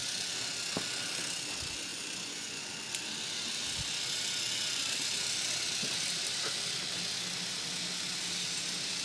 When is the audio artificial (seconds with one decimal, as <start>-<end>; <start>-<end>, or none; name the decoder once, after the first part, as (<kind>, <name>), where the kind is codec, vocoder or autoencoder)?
1.9-2.7 (vocoder, Vocos)